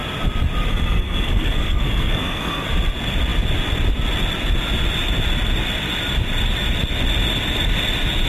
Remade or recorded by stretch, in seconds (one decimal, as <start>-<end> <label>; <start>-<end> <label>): 0.0-0.7 recorded; 0.7-2.7 remade; 2.7-8.3 recorded